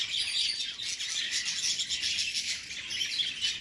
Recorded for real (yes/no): yes